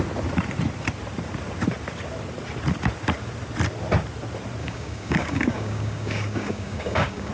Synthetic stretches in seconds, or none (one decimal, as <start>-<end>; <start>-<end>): 4.6-7.3